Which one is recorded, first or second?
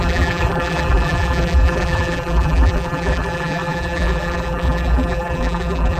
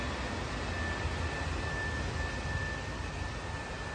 second